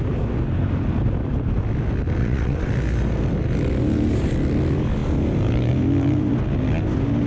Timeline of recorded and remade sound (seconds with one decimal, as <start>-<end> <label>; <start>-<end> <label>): 0.0-2.2 recorded; 2.2-2.7 remade; 2.7-7.3 recorded